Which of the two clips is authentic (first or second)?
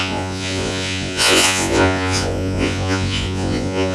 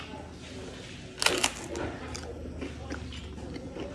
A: second